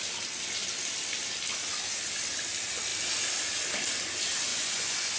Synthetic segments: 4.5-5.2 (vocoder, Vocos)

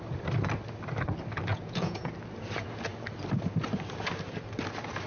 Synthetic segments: 1.5-2.1 (vocoder, Vocos)

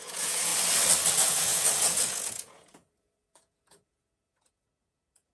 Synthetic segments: 0.0-0.5 (vocoder, Vocos); 1.1-5.3

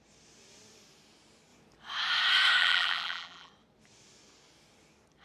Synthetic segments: 2.6-3.5 (vocoder, BigVGAN v2)

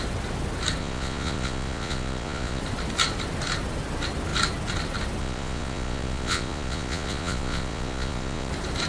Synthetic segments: 0.8-2.6 (vocoder, Vocos); 5.2-8.5

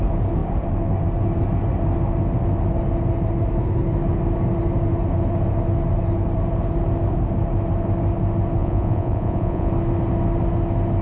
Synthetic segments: 8.6-9.7 (vocoder, Vocos)

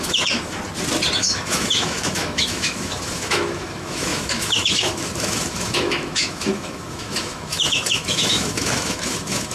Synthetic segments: 0.0-0.6 (autoencoder, DAC-VAE); 1.2-9.5